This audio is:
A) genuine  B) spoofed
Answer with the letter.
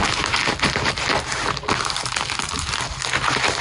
A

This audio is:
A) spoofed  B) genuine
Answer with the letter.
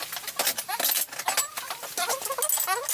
B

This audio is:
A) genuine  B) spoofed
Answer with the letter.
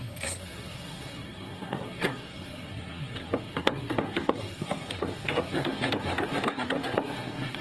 B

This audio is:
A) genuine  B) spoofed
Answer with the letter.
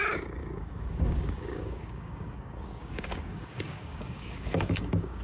B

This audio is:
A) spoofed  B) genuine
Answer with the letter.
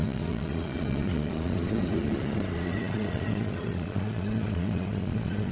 A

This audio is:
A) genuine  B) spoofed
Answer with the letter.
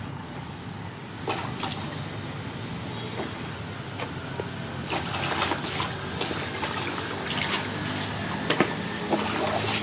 A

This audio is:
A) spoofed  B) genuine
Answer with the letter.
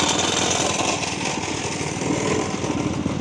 B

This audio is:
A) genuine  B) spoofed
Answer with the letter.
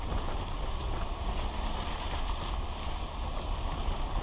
A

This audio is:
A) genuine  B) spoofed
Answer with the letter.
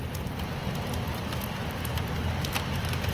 A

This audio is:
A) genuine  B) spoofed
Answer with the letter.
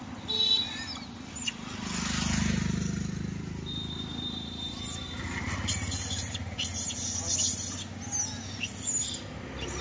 A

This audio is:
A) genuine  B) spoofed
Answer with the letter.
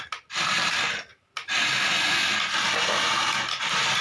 A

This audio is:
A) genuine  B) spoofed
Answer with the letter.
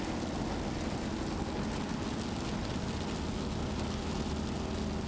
A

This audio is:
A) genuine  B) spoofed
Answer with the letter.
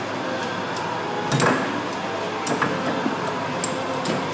A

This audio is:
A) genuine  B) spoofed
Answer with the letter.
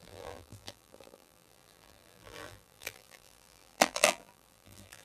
B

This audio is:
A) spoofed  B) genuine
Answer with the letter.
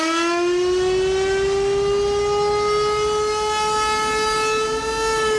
B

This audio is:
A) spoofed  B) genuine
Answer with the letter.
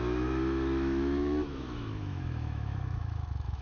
A